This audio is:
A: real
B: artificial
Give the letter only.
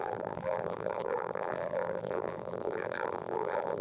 B